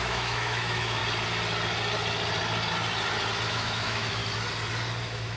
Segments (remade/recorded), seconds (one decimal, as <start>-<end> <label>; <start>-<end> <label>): 0.0-1.0 remade; 1.0-3.5 recorded; 3.5-4.2 remade; 4.2-5.0 recorded; 5.0-5.4 remade